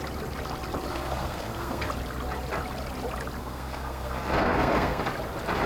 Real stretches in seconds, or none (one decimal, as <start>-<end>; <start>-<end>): 0.0-0.9; 1.9-3.4; 5.0-5.7